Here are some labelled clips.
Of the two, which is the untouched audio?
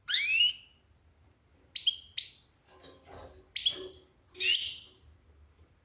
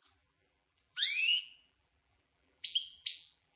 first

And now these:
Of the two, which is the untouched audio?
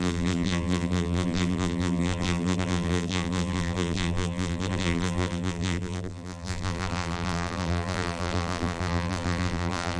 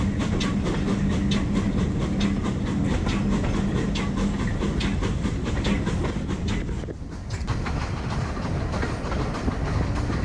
second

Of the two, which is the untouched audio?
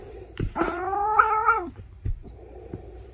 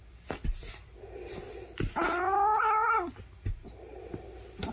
second